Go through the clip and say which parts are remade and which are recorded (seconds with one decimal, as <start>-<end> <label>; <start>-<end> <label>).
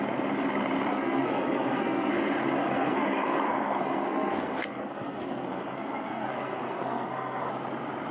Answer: 0.0-0.9 recorded; 0.9-2.1 remade; 2.1-2.6 recorded; 2.6-7.5 remade; 7.5-8.1 recorded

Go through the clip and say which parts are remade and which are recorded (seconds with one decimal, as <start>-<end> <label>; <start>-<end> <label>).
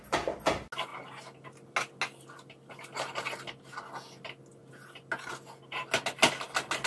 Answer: 0.0-6.9 recorded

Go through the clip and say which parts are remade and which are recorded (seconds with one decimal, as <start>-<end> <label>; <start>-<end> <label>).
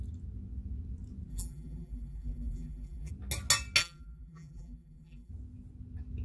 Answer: 0.0-1.3 recorded; 1.3-3.1 remade; 3.1-3.8 recorded; 3.8-5.3 remade; 5.3-6.2 recorded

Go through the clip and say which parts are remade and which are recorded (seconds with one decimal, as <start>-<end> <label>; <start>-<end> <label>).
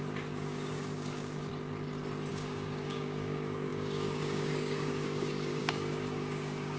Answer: 0.0-1.5 remade; 1.5-2.3 recorded; 2.3-6.8 remade